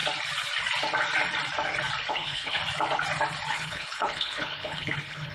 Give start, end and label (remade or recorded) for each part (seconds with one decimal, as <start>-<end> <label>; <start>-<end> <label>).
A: 0.0-2.1 recorded; 2.1-2.6 remade; 2.6-3.5 recorded; 3.5-5.3 remade